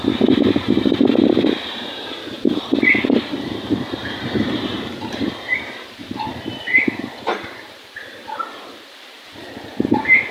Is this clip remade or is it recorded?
remade